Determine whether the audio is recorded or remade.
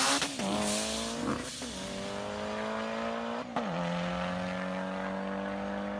recorded